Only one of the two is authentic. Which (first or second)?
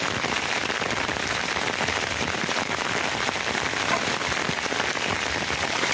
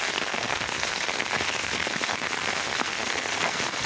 first